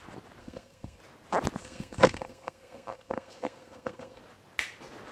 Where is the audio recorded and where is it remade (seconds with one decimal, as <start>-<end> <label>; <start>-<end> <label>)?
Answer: 0.0-0.4 recorded; 0.4-1.0 remade; 1.0-1.6 recorded; 1.6-4.2 remade; 4.2-5.1 recorded